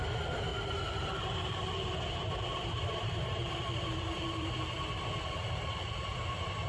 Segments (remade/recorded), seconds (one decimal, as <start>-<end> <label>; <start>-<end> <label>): 0.0-0.5 recorded; 0.5-4.5 remade; 4.5-6.7 recorded